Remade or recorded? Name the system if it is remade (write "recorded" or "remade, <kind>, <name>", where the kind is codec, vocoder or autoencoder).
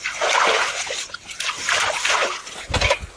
recorded